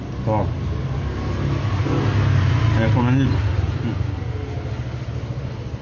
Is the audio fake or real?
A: real